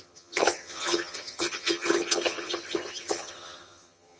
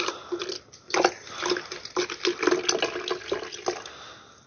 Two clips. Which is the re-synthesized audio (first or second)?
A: first